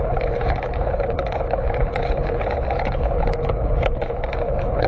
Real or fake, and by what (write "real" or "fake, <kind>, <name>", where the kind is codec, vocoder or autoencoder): fake, codec, HILCodec